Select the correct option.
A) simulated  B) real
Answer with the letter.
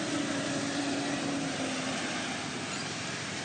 B